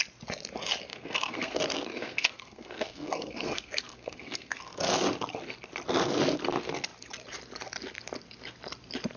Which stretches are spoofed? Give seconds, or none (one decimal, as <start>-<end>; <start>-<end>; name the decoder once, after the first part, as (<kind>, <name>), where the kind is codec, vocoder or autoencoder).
0.9-1.6 (codec, SNAC); 2.0-4.9